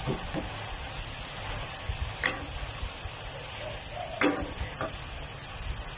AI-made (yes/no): no